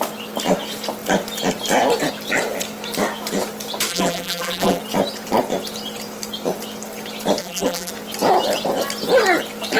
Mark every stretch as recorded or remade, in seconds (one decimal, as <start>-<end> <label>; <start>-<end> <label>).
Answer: 0.0-3.9 recorded; 3.9-4.8 remade; 4.8-7.4 recorded; 7.4-7.9 remade; 7.9-9.8 recorded